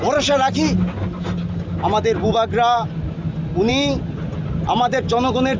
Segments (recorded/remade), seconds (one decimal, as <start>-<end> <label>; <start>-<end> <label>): 0.0-5.6 recorded

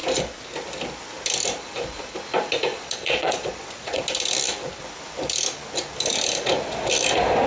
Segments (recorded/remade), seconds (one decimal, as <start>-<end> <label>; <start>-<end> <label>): 0.0-2.7 recorded; 2.7-4.0 remade; 4.0-7.5 recorded

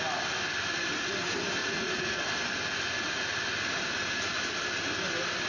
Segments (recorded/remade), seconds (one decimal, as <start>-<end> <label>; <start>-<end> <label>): 0.0-1.6 recorded; 1.6-2.2 remade; 2.2-5.5 recorded

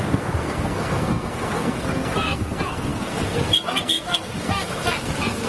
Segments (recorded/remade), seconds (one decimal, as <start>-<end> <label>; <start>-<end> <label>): 0.0-5.5 remade

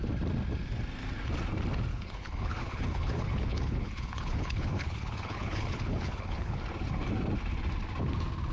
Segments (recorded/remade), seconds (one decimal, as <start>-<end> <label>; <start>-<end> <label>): 0.0-1.9 recorded; 1.9-6.6 remade; 6.6-8.5 recorded

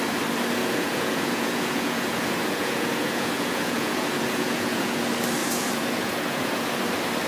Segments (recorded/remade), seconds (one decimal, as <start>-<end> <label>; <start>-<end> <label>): 0.0-0.6 recorded; 0.6-5.0 remade; 5.0-5.4 recorded; 5.4-6.8 remade; 6.8-7.3 recorded